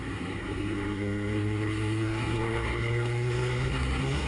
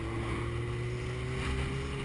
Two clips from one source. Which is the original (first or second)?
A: second